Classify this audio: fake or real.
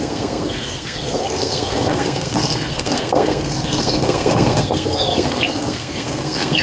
fake